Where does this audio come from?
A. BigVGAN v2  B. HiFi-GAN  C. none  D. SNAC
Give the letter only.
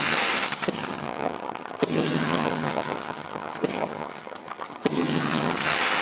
B